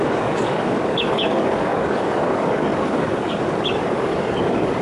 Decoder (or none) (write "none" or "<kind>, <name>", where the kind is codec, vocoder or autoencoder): codec, DAC